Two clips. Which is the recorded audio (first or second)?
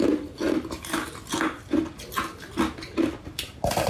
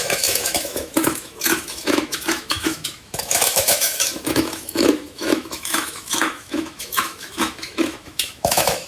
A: first